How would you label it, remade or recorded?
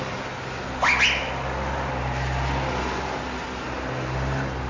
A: recorded